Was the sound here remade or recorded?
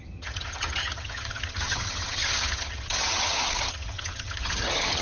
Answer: remade